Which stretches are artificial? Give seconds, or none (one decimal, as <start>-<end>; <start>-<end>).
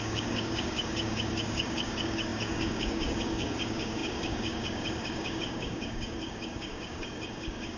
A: 0.0-7.8